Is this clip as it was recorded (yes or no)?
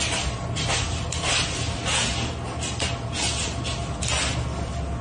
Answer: yes